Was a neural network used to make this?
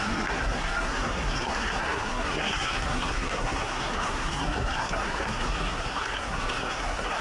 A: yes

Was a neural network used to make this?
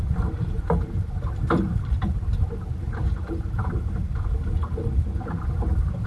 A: no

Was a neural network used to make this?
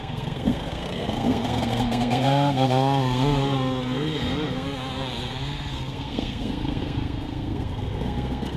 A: yes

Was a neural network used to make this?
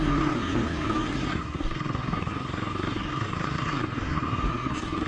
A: yes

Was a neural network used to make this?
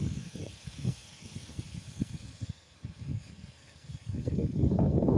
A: yes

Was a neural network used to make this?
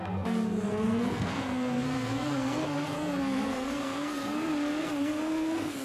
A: yes